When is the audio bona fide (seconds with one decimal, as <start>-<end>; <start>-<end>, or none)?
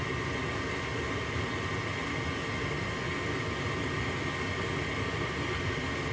0.0-6.1